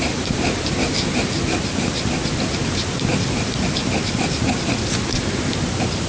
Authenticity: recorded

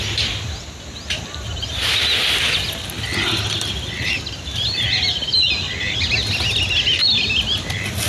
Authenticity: recorded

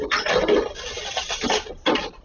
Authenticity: recorded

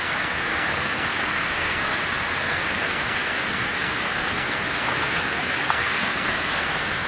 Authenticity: remade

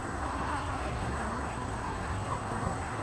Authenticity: remade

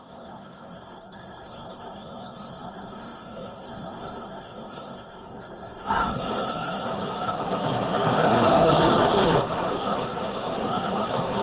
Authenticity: remade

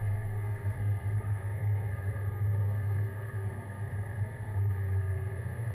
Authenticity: remade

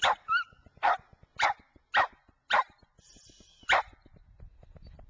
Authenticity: recorded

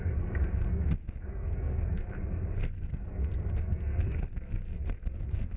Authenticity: remade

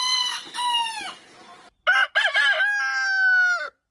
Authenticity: recorded